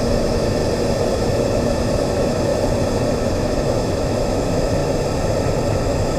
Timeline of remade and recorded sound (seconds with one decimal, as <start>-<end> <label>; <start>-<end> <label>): 0.0-0.6 remade; 0.6-1.1 recorded; 1.1-2.5 remade; 2.5-3.1 recorded; 3.1-4.8 remade; 4.8-5.8 recorded; 5.8-6.2 remade